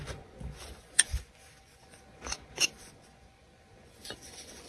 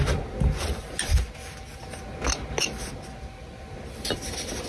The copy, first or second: first